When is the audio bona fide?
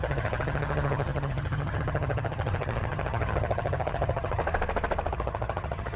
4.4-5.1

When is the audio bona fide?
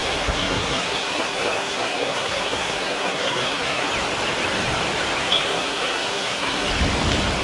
3.9-5.2; 6.7-7.4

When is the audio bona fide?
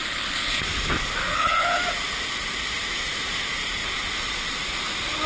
0.6-1.2; 1.8-5.3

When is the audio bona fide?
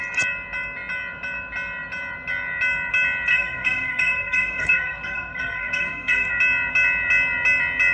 0.0-3.3; 6.3-7.9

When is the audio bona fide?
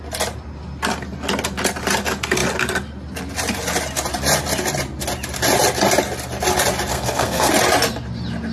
0.0-6.9; 7.5-8.5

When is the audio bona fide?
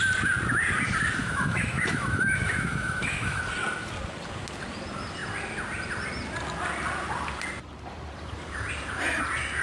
0.0-1.2; 3.4-9.6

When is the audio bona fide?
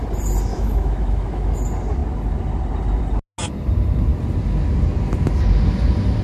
0.0-0.5; 1.6-6.2